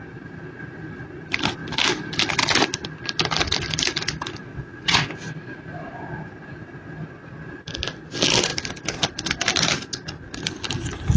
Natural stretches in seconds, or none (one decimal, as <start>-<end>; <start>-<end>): 0.0-4.5; 5.1-11.2